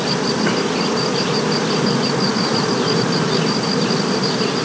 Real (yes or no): yes